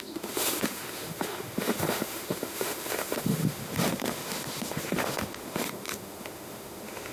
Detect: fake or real fake